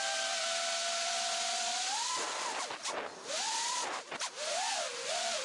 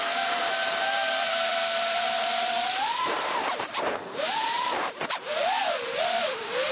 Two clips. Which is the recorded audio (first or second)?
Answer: first